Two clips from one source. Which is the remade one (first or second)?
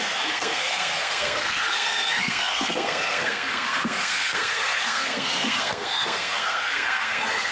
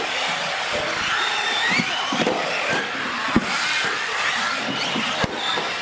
first